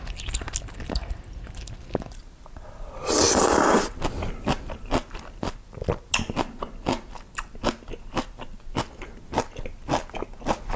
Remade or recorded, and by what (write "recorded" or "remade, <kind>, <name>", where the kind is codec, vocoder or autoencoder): recorded